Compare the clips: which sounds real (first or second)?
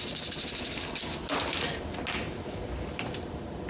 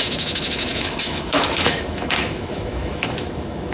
first